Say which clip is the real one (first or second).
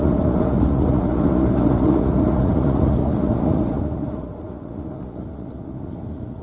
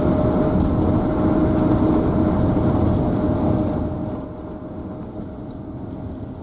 second